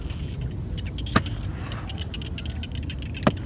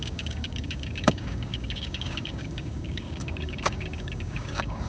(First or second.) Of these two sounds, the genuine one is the first